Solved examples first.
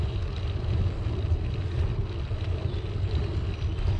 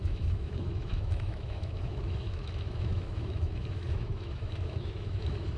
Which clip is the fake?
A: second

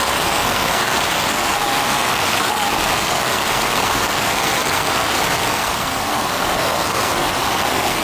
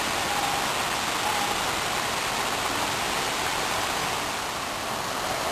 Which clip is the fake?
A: first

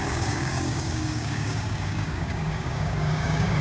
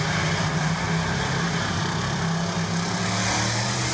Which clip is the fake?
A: first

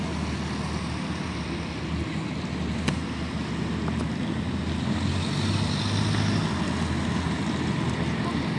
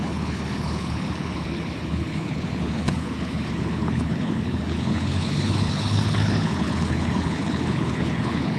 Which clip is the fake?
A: second